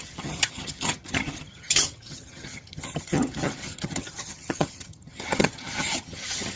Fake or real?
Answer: fake